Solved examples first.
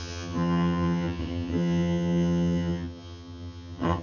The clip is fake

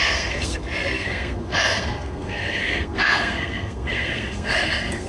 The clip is fake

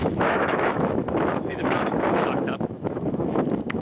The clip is fake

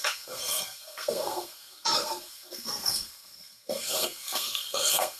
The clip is fake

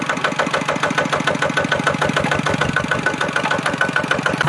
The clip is real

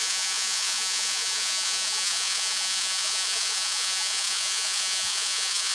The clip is fake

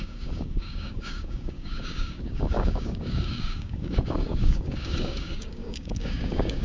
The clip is fake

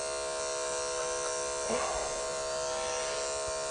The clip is real